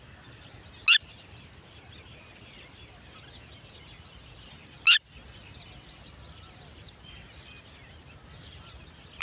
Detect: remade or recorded recorded